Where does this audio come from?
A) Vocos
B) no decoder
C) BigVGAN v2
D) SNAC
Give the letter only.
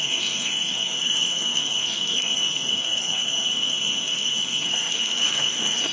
D